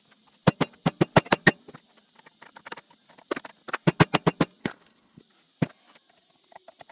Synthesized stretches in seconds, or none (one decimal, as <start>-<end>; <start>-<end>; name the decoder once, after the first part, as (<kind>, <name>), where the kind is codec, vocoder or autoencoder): 4.6-5.2 (codec, HILCodec)

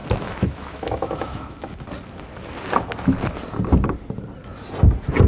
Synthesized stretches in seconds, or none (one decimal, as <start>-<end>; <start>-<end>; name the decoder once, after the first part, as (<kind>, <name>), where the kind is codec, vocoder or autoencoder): 0.0-1.7 (autoencoder, DAC-VAE)

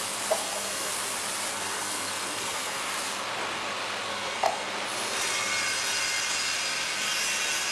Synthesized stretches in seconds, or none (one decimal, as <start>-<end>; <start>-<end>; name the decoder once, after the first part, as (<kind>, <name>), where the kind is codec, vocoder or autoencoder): 0.4-0.9 (codec, SNAC); 1.5-2.8; 4.1-4.7

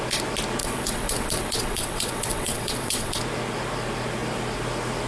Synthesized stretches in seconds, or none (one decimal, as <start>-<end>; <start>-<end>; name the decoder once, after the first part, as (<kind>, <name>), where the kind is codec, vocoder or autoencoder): 0.6-3.2 (vocoder, WaveNeXt)

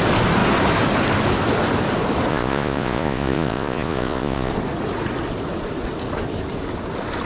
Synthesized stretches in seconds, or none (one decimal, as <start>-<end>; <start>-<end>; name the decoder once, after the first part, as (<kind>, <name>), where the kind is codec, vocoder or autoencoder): 2.3-4.5 (vocoder, Vocos)

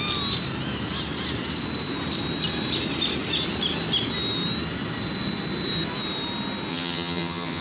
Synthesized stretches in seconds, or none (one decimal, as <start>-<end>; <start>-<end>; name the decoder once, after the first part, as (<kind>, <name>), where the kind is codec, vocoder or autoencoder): 6.7-7.6 (vocoder, HiFi-GAN)

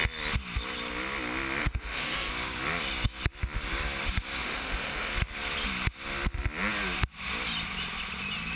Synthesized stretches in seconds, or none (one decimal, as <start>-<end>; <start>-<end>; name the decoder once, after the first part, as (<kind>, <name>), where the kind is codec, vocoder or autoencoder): 1.6-2.3 (autoencoder, DAC-VAE); 4.4-5.1

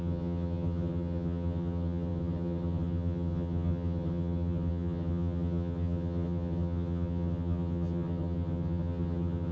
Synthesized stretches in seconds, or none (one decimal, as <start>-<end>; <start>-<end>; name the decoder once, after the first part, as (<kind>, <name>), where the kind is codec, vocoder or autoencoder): 0.0-9.5 (vocoder, HiFi-GAN)